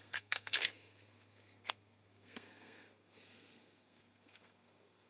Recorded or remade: remade